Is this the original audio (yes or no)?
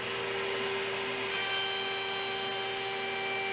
yes